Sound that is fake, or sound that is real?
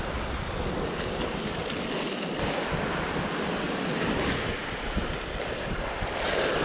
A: real